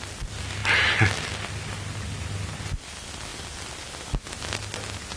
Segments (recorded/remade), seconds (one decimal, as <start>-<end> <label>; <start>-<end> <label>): 0.0-5.2 recorded